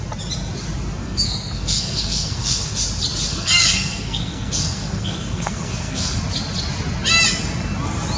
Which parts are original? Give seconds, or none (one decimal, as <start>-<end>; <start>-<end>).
0.0-1.0; 2.8-3.3; 6.2-8.2